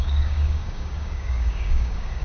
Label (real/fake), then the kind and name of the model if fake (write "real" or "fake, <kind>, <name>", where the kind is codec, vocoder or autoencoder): fake, codec, DAC